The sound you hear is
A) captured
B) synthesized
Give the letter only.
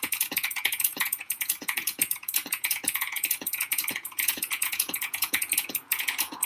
B